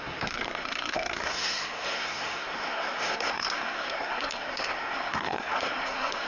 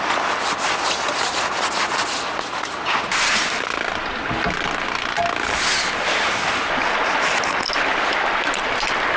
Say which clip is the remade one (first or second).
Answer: first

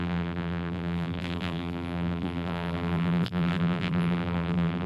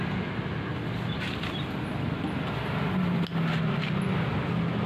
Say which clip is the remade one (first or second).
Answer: first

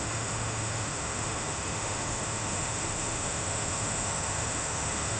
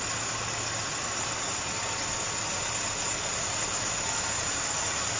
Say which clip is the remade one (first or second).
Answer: first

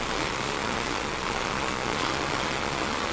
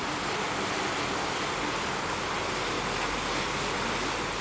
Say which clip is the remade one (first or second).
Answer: first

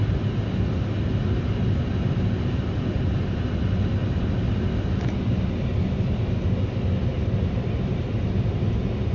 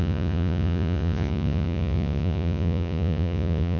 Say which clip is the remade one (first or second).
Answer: second